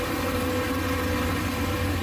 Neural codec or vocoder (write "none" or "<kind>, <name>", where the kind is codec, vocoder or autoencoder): none